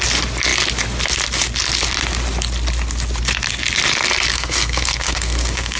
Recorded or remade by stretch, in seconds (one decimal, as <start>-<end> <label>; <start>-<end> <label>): 0.0-4.3 recorded; 4.3-5.8 remade